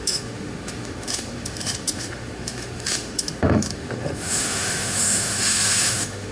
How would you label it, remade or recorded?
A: remade